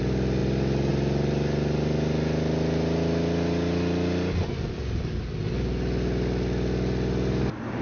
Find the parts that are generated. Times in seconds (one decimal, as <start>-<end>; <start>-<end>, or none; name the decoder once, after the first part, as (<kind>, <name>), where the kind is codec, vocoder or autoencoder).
none